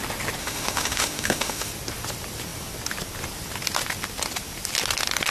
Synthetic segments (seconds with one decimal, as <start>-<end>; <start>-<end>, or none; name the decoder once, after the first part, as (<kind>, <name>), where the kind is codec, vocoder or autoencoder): 0.4-1.7 (autoencoder, DAC-VAE)